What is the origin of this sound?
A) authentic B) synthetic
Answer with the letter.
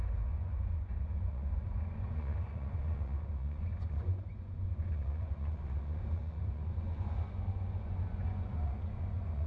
B